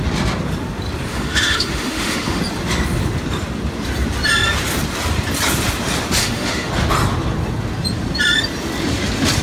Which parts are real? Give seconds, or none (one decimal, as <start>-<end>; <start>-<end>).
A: 0.0-1.1; 2.4-6.2; 6.7-9.4